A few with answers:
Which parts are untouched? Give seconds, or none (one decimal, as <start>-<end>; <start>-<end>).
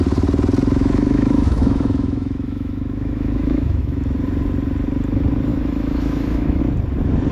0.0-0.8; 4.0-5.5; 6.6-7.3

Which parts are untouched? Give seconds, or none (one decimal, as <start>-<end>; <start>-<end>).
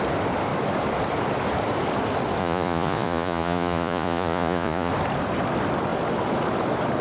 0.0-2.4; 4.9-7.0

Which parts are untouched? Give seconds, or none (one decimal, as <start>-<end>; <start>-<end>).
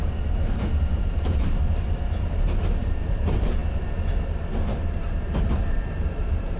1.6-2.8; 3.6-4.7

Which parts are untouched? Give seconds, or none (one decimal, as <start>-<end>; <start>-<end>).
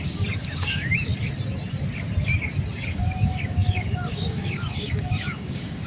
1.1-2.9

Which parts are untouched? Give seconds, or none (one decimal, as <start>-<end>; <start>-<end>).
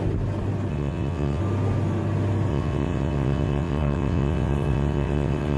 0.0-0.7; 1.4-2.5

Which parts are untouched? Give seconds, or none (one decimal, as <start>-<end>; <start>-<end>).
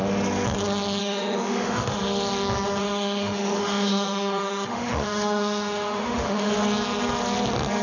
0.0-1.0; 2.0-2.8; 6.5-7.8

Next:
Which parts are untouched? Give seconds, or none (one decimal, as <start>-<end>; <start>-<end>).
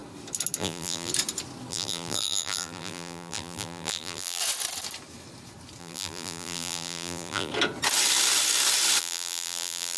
0.0-0.6; 1.1-1.7; 4.4-5.8; 7.5-9.0